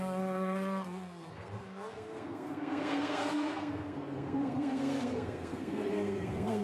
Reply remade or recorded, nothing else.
remade